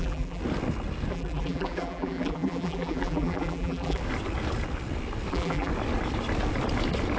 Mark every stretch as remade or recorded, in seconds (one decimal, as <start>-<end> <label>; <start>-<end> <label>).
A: 0.0-0.4 remade; 0.4-1.1 recorded; 1.1-4.0 remade; 4.0-5.3 recorded; 5.3-5.7 remade; 5.7-7.2 recorded